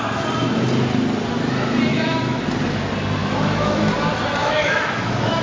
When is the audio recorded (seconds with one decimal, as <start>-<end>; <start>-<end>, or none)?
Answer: 0.0-1.9; 2.4-3.2; 3.9-4.4